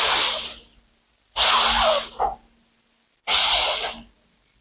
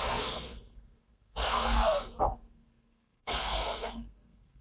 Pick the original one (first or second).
first